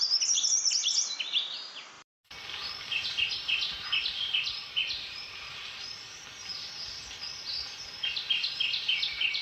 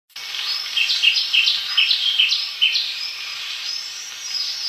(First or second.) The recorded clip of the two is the second